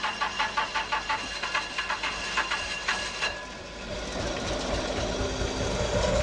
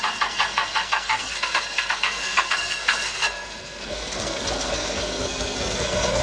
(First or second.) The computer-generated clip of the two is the second